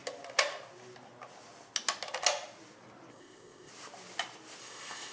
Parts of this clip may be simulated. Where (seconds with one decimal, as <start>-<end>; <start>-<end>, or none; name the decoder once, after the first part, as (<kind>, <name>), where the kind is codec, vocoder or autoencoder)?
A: 3.1-3.7 (codec, ZipCodec); 4.6-5.1